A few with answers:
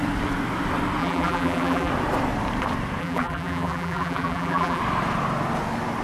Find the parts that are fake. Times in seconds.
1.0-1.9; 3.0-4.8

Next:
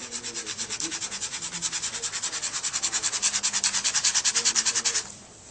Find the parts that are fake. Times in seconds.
4.1-4.7

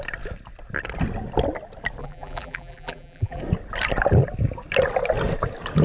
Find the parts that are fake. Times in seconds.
2.0-3.4

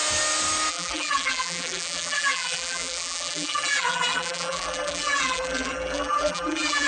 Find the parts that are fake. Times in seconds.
0.7-6.9

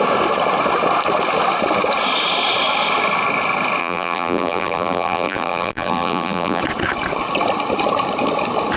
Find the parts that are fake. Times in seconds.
3.8-6.6

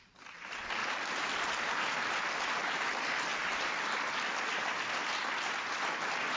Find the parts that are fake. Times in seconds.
0.8-1.3

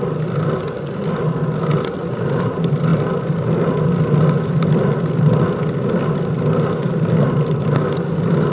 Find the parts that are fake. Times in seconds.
none